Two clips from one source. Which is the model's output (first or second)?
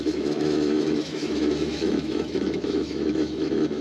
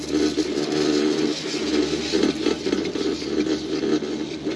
first